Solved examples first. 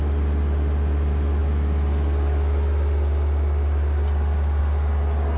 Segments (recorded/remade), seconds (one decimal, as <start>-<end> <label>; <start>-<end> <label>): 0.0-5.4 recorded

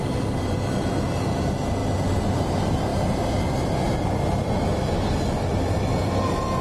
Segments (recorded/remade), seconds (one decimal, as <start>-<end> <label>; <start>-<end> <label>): 0.0-6.6 recorded

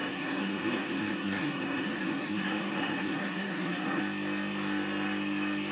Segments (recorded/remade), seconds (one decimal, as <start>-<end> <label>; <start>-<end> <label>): 0.0-4.0 remade; 4.0-5.7 recorded

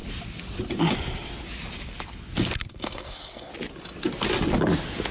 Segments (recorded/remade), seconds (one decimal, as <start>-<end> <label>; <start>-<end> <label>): 0.0-2.7 recorded; 2.7-3.5 remade; 3.5-5.1 recorded

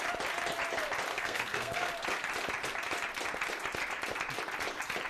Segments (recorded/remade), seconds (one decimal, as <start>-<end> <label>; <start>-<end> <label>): 0.0-1.1 recorded; 1.1-1.9 remade; 1.9-5.1 recorded

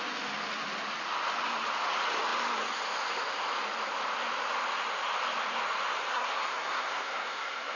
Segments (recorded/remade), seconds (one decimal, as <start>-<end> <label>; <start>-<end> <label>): 0.0-6.1 recorded; 6.1-7.8 remade

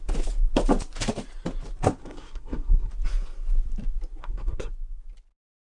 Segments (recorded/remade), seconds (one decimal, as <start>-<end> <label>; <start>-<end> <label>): 0.0-2.0 recorded; 2.0-2.9 remade; 2.9-4.2 recorded; 4.2-4.7 remade; 4.7-5.8 recorded